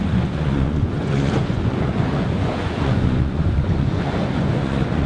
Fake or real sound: fake